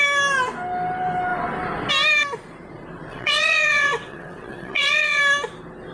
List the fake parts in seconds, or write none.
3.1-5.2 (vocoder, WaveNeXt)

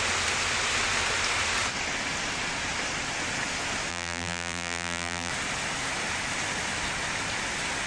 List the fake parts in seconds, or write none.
3.9-5.3 (vocoder, BigVGAN v2)

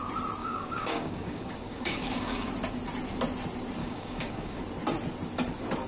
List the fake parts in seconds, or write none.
0.4-2.5 (codec, DAC); 3.8-4.6